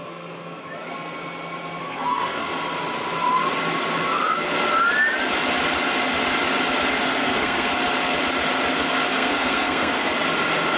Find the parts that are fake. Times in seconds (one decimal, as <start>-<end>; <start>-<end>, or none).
0.0-0.6; 1.8-2.5; 6.9-7.7; 9.1-10.1